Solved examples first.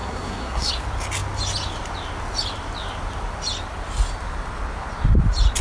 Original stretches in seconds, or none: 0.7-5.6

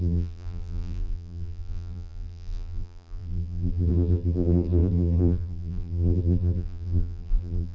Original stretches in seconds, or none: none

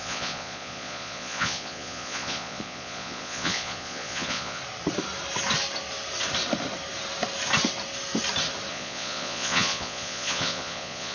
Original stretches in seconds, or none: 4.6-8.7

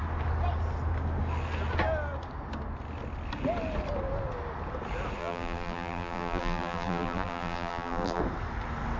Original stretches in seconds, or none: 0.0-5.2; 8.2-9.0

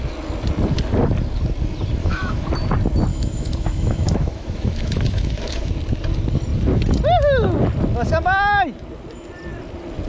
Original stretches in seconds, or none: 0.0-2.0; 2.5-3.1; 5.7-10.1

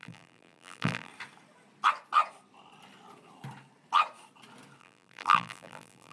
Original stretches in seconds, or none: 1.1-4.8